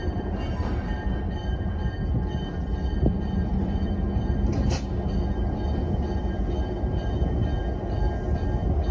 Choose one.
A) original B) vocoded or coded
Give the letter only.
A